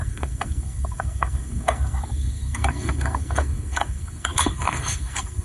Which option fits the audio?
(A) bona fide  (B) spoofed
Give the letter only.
B